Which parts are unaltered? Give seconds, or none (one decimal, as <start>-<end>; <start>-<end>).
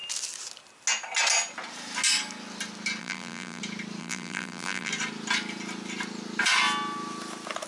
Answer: 0.0-3.0; 3.6-4.0; 4.9-7.7